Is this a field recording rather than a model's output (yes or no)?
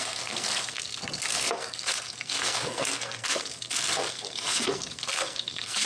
no